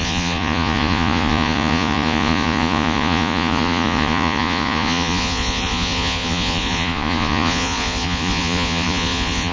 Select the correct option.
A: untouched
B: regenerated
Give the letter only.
B